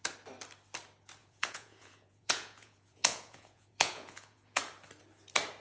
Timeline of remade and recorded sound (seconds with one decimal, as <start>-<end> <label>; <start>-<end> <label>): 0.0-1.2 recorded; 1.2-4.6 remade; 4.6-5.6 recorded